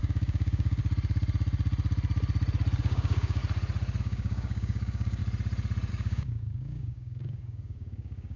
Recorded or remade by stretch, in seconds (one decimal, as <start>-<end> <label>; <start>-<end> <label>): 0.0-0.8 remade; 0.8-2.8 recorded; 2.8-3.4 remade; 3.4-4.0 recorded; 4.0-5.2 remade; 5.2-5.9 recorded; 5.9-8.4 remade